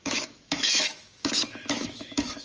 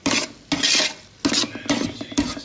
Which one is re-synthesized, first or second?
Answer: first